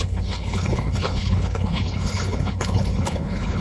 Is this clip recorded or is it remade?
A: remade